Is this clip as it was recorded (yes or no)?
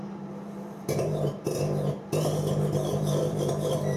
no